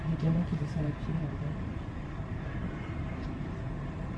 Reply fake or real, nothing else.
fake